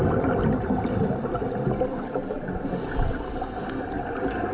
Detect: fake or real real